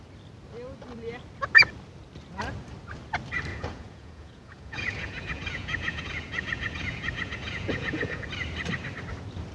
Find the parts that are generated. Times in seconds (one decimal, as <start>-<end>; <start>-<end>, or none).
3.5-8.3